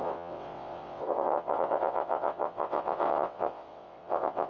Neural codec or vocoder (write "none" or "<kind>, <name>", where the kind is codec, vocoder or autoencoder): vocoder, WaveNeXt